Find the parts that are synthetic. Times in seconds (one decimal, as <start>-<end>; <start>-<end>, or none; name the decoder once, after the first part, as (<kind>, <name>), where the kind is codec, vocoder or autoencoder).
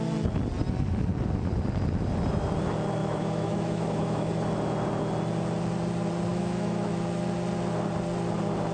3.0-4.3 (autoencoder, DAC-VAE); 6.3-6.9